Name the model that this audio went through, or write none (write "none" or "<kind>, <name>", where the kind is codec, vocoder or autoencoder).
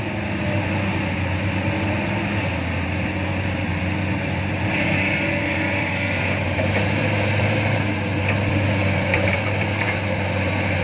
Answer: none